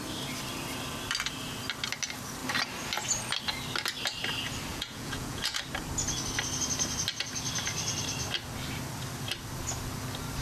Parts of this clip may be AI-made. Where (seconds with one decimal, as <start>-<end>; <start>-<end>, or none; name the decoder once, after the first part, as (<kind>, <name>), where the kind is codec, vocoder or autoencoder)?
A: 4.7-5.6 (vocoder, Vocos)